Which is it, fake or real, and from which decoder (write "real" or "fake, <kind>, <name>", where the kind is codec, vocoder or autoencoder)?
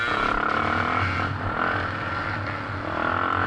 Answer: real